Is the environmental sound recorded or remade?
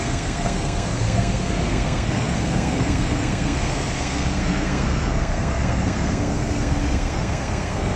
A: remade